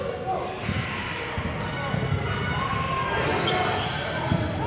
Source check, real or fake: real